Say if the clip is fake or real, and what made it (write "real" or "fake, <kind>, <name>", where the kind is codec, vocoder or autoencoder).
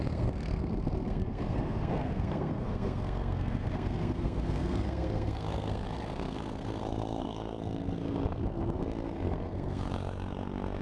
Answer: fake, codec, SNAC